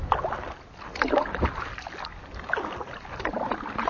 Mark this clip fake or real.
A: real